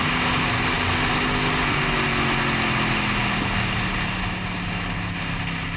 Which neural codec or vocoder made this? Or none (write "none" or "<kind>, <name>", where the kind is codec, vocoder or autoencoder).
none